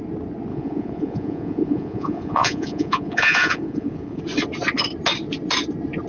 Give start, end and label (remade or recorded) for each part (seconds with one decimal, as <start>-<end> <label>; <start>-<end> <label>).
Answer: 0.0-0.5 recorded; 0.5-4.2 remade; 4.2-6.1 recorded